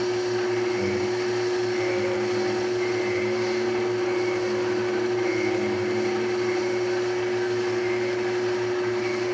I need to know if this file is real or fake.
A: real